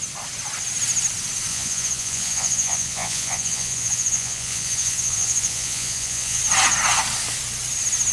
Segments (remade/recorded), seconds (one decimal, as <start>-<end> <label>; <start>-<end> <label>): 0.0-1.5 recorded; 1.5-6.4 remade; 6.4-8.1 recorded